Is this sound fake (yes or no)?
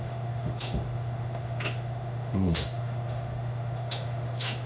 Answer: yes